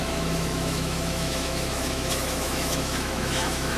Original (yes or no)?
no